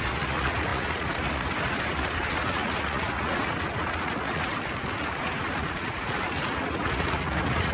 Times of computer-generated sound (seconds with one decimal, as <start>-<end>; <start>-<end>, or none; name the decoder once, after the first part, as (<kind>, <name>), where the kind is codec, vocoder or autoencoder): 0.0-7.7 (vocoder, Vocos)